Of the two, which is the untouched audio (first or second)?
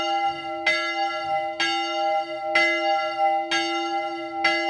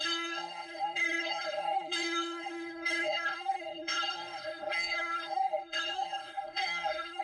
first